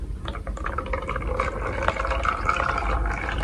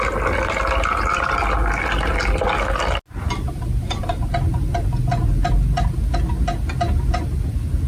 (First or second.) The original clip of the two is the second